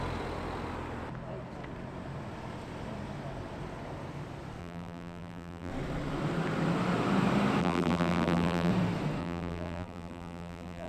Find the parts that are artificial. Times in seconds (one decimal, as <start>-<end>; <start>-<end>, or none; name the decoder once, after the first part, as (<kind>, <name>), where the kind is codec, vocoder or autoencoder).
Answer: 4.6-5.7 (vocoder, BigVGAN v2); 7.6-8.7; 9.2-10.9